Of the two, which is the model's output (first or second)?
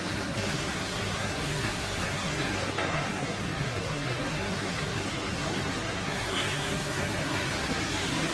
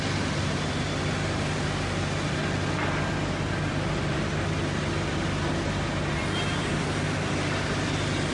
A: first